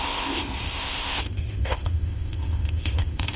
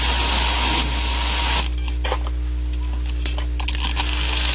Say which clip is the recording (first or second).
second